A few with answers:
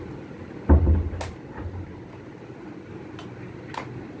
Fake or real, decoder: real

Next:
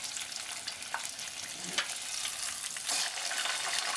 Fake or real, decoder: real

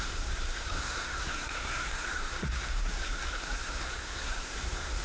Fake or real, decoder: fake, codec, SNAC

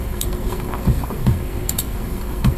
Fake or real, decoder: fake, codec, SNAC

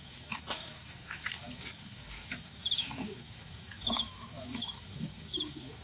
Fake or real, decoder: fake, codec, DAC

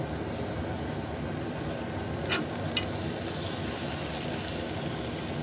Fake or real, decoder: real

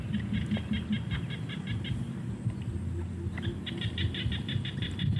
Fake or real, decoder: real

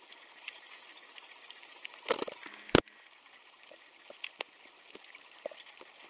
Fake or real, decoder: real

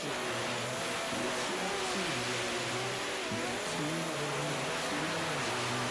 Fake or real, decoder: real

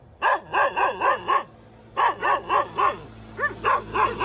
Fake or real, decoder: real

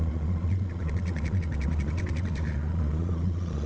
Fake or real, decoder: fake, vocoder, Vocos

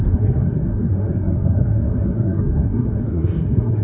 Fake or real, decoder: fake, codec, SNAC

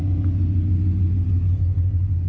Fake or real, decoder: real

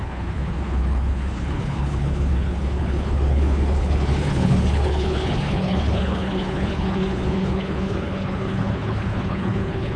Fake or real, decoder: fake, codec, HILCodec